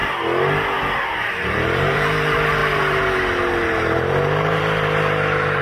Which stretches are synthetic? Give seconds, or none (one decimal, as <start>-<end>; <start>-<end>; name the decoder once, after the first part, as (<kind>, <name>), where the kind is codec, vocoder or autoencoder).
1.3-5.6 (vocoder, BigVGAN v2)